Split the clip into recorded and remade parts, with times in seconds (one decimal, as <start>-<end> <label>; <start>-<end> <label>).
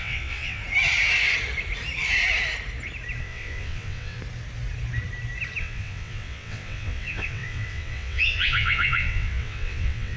0.0-0.6 remade; 0.6-3.2 recorded; 3.2-4.2 remade; 4.2-5.6 recorded; 5.6-10.2 remade